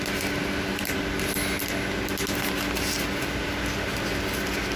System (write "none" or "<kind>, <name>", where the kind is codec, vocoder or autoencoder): none